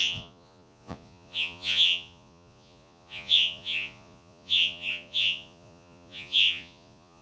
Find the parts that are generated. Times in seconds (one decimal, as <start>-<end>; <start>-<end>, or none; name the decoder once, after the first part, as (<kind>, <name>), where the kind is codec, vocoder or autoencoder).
0.0-7.2 (vocoder, Vocos)